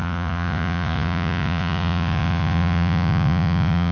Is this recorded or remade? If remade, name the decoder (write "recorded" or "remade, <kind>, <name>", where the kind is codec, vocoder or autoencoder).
remade, vocoder, Vocos